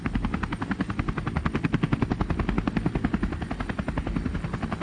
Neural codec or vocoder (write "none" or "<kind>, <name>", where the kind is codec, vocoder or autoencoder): none